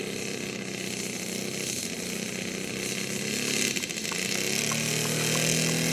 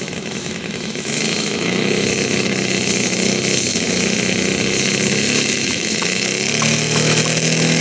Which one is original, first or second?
first